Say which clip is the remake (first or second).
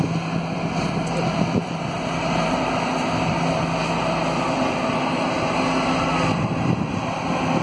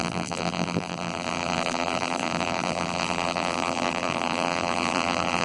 second